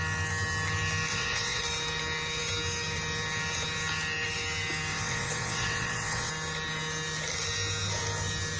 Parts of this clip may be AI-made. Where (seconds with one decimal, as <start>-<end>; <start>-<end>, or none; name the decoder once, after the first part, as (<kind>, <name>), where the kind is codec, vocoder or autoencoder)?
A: 1.1-1.6 (vocoder, WaveNeXt); 4.9-6.3